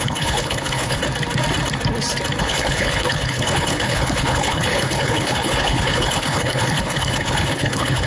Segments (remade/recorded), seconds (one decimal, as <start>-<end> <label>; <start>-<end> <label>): 0.0-1.0 remade; 1.0-2.4 recorded; 2.4-8.1 remade